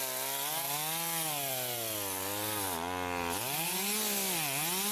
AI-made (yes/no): no